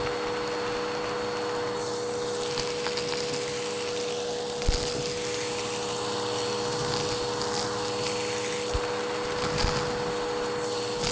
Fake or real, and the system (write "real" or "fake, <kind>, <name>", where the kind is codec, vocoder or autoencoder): real